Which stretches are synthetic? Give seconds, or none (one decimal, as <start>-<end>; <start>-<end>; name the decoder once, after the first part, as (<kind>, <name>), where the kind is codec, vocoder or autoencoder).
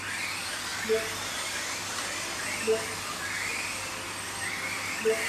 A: none